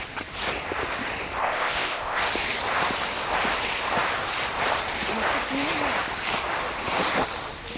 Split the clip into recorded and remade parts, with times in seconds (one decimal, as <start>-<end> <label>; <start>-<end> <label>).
0.0-1.4 recorded; 1.4-2.2 remade; 2.2-7.8 recorded